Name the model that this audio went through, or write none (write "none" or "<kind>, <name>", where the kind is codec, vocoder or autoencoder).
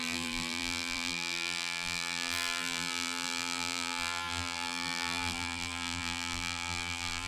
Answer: vocoder, BigVGAN v2